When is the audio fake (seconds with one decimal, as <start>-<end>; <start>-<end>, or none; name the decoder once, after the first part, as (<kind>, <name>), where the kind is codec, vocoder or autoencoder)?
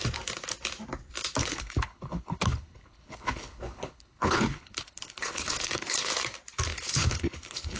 1.4-6.1 (codec, HILCodec); 6.7-7.8